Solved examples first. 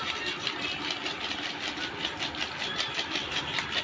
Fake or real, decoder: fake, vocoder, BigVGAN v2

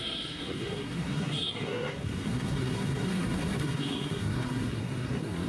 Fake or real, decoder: fake, codec, SNAC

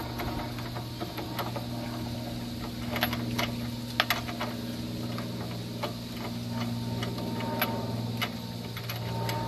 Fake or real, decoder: real